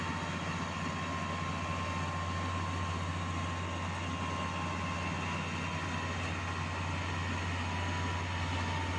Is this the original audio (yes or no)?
yes